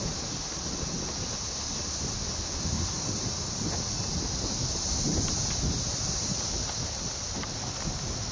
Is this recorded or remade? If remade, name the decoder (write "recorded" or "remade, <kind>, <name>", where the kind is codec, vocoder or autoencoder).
recorded